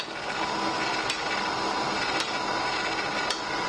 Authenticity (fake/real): real